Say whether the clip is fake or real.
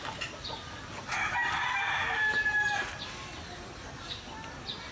real